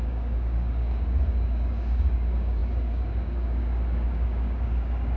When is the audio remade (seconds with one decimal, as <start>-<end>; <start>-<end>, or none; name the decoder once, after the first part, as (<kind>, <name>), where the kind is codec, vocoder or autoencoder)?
0.0-5.2 (codec, DAC)